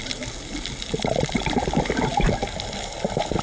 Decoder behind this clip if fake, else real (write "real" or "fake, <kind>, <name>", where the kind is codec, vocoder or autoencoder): real